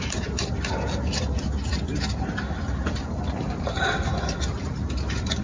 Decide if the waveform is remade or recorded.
recorded